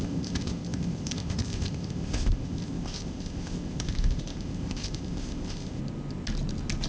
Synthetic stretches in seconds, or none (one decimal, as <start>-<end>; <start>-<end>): 0.0-5.8